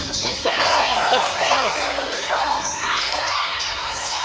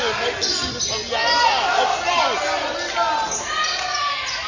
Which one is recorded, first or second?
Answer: second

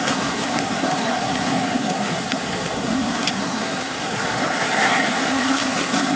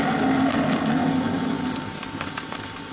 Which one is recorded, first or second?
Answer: second